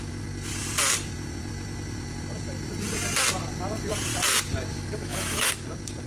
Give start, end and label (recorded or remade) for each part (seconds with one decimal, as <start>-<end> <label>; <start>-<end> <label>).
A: 0.0-4.7 recorded; 4.7-5.5 remade; 5.5-6.1 recorded